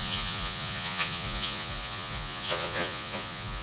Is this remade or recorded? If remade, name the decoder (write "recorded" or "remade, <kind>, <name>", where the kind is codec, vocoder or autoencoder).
remade, vocoder, Vocos